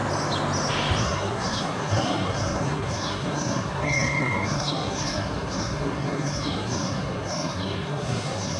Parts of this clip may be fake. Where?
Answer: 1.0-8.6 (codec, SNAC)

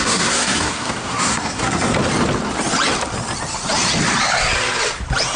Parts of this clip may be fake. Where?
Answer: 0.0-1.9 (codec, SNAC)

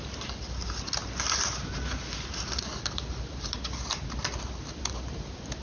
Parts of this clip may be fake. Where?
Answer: none

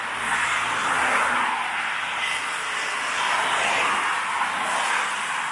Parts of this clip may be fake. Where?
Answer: none